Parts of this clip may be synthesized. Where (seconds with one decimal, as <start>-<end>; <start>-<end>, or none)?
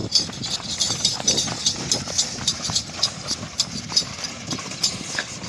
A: none